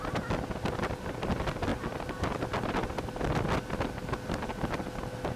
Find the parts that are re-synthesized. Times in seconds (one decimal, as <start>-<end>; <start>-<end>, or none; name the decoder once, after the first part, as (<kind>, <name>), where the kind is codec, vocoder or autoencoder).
none